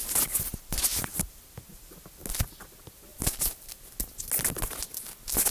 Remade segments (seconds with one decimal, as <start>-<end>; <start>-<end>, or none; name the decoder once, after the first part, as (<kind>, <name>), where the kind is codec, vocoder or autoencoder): none